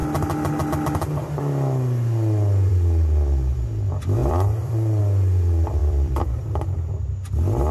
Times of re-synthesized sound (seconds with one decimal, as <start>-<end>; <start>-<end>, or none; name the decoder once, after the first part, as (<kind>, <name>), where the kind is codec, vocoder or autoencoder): 4.2-5.0 (vocoder, BigVGAN v2); 5.8-6.9